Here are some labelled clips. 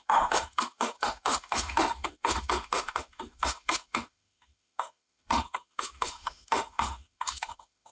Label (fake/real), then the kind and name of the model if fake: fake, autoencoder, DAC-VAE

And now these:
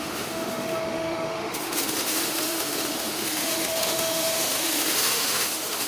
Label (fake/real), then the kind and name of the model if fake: fake, autoencoder, DAC-VAE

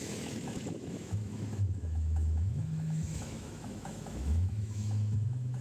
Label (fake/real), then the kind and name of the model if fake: fake, autoencoder, DAC-VAE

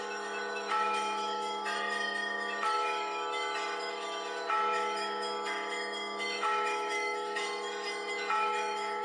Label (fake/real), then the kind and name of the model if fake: fake, autoencoder, DAC-VAE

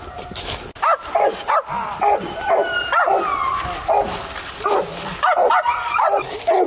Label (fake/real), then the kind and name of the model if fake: real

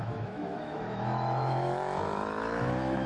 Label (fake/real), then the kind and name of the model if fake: fake, autoencoder, DAC-VAE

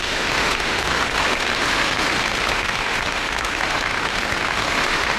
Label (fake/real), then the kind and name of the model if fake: fake, autoencoder, DAC-VAE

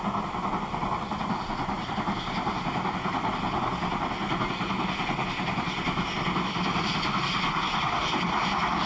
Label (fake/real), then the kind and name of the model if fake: real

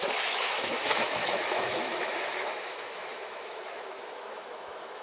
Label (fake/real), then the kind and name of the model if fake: fake, autoencoder, DAC-VAE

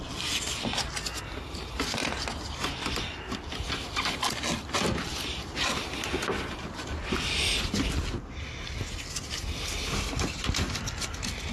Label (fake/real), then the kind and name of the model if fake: real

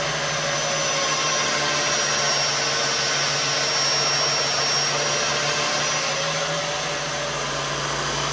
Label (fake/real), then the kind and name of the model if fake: real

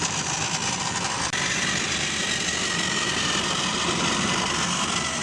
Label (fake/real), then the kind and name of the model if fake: real